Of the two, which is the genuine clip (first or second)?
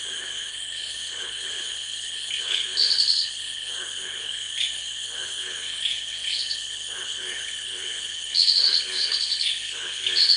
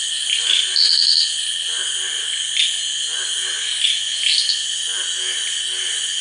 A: second